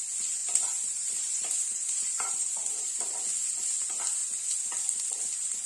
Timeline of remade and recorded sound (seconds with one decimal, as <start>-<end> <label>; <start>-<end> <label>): 0.0-0.4 recorded; 0.4-3.0 remade; 3.0-5.7 recorded